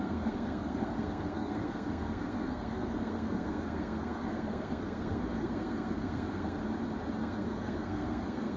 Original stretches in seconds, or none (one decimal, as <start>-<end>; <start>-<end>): 6.6-7.2